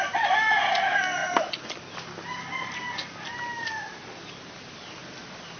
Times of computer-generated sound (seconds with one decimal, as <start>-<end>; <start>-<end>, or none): none